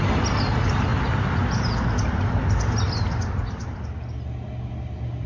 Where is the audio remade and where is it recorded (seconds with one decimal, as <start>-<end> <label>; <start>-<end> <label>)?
0.0-5.3 recorded